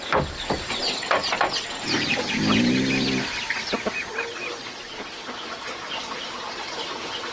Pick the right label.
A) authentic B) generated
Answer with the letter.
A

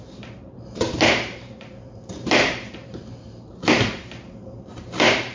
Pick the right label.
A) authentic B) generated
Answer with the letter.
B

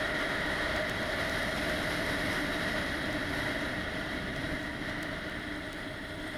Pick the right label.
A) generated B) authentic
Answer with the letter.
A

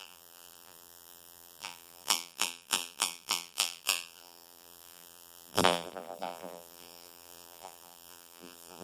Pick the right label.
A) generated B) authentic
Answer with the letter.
A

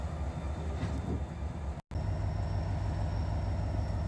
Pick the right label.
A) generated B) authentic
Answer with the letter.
B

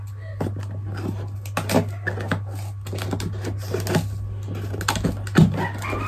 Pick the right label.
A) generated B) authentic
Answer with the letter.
B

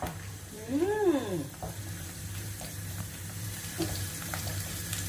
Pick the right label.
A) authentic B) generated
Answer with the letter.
B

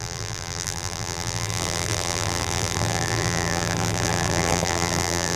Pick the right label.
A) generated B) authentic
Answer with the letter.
A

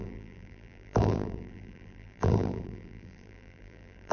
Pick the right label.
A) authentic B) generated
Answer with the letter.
B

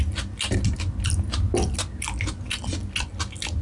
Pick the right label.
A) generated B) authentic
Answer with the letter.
B